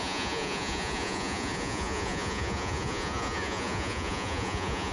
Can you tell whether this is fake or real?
fake